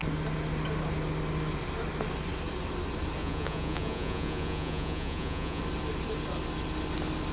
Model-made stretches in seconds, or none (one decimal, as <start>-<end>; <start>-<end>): 3.2-5.6